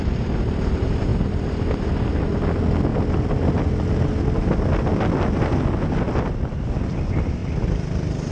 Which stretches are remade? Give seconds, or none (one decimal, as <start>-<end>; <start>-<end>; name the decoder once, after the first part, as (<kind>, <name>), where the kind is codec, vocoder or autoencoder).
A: 1.1-2.1 (vocoder, BigVGAN v2); 7.4-8.3